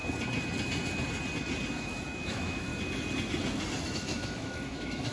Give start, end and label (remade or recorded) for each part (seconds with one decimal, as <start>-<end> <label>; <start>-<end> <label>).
0.0-1.8 recorded; 1.8-2.7 remade; 2.7-3.8 recorded; 3.8-5.1 remade